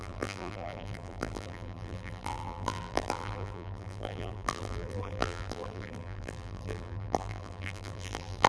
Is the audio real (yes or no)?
no